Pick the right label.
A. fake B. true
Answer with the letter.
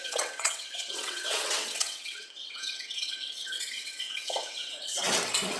A